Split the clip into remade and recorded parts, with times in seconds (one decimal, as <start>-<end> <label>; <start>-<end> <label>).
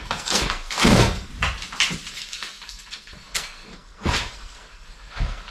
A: 0.0-1.3 remade; 1.3-2.1 recorded; 2.1-5.5 remade